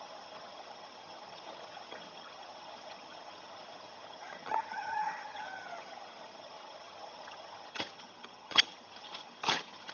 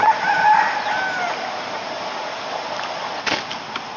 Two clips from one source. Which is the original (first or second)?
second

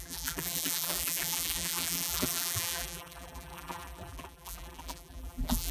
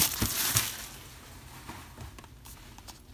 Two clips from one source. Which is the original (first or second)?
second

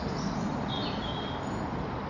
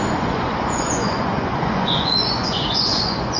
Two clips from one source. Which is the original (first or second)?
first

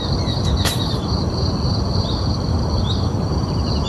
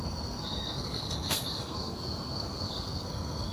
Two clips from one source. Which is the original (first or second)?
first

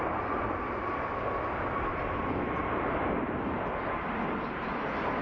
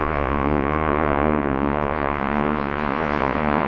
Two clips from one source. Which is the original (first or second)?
first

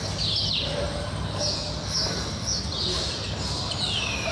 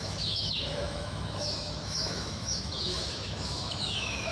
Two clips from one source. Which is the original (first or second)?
first